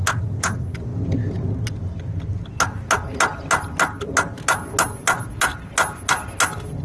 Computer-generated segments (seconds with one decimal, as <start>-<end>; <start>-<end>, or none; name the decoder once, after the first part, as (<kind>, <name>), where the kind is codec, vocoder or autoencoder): none

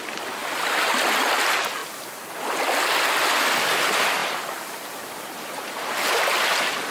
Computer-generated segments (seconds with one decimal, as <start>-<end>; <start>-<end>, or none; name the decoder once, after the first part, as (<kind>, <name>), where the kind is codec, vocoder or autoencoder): 4.2-6.2 (vocoder, BigVGAN v2)

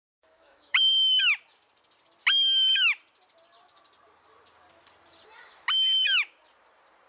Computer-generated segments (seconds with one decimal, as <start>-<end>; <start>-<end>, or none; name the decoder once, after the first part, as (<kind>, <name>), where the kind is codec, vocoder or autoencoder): 0.0-1.2 (autoencoder, DAC-VAE)

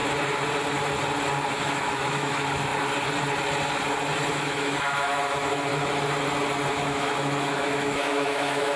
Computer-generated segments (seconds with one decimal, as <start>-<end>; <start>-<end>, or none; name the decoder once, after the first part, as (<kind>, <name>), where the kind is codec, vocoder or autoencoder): 1.5-2.7 (autoencoder, DAC-VAE); 4.3-5.7; 6.7-8.8